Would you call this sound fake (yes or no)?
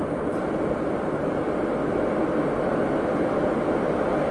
no